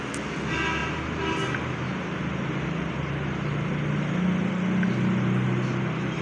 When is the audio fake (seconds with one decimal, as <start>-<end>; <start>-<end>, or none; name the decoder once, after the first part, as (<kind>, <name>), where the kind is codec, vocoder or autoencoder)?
none